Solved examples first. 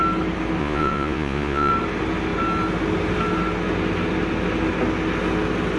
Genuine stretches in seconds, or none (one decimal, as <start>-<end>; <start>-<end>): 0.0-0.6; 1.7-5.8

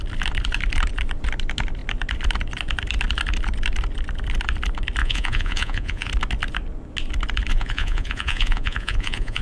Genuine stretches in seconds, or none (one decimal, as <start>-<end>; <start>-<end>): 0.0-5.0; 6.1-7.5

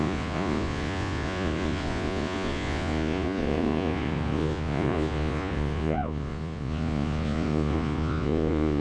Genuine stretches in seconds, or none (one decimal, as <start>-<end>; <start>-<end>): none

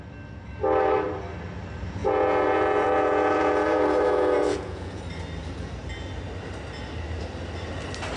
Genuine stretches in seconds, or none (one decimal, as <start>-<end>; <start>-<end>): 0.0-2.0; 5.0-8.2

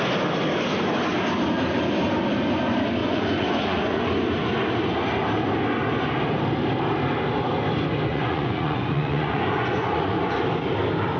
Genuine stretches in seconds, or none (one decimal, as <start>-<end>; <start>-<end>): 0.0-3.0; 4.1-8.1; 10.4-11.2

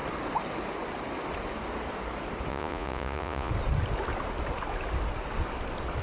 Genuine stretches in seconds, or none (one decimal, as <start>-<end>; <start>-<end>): 0.0-2.5; 3.5-6.0

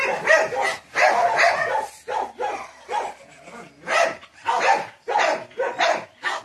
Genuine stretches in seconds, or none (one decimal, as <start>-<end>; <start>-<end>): 0.0-6.4